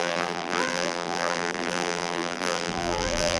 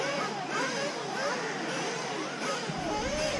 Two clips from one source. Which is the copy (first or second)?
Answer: first